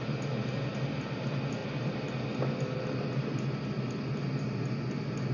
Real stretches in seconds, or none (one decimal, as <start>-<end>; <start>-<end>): 0.0-5.3